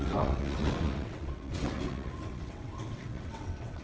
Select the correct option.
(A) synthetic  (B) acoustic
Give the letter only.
A